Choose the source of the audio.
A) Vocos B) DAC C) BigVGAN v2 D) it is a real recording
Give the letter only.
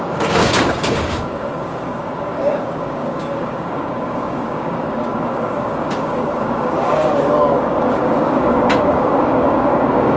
B